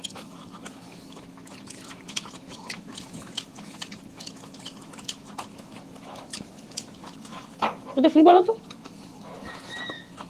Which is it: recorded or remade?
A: remade